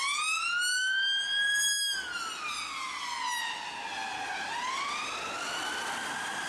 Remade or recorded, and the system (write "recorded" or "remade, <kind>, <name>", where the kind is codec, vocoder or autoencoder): recorded